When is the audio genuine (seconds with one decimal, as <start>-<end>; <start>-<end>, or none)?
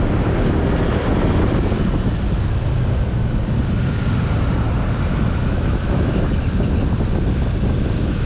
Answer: 0.0-5.1; 6.2-8.3